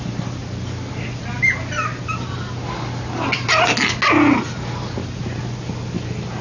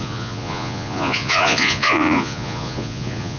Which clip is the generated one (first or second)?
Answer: second